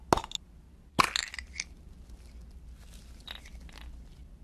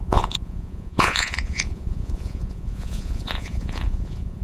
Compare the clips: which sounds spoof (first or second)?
second